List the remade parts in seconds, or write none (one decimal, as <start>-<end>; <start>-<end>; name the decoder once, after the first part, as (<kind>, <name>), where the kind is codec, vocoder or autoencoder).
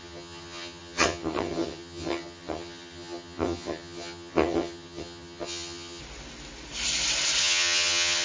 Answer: 0.0-6.0 (vocoder, HiFi-GAN); 7.4-8.2